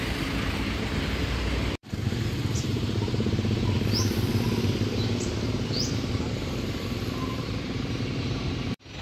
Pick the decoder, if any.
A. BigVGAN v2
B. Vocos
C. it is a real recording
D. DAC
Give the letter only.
A